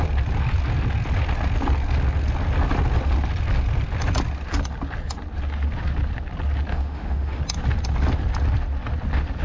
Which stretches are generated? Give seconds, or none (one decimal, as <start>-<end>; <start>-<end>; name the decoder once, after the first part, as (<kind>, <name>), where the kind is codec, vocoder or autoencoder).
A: 6.7-7.4 (autoencoder, DAC-VAE)